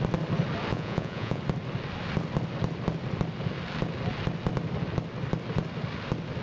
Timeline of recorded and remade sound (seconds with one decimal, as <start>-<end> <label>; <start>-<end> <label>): 0.0-0.7 recorded; 0.7-1.4 remade; 1.4-6.4 recorded